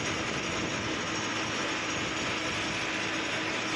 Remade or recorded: recorded